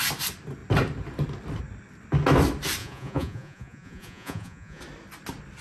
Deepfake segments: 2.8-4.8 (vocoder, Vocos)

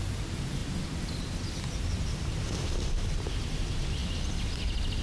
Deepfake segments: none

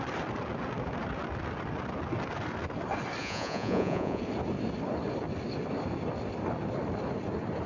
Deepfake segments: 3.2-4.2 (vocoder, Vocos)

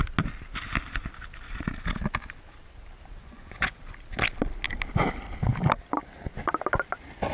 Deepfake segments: 3.2-3.8 (vocoder, Vocos)